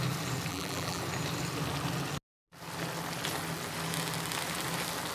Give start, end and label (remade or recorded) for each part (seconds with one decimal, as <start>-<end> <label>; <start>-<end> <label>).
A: 0.0-0.5 recorded; 0.5-1.0 remade; 1.0-5.1 recorded